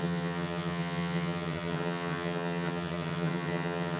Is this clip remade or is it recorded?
remade